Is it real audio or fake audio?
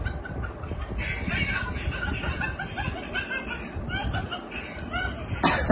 real